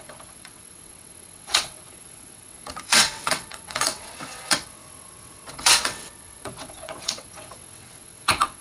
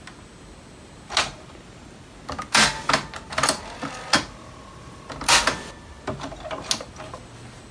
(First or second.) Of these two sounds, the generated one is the first